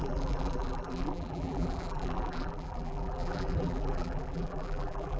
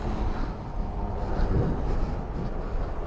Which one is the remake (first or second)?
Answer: first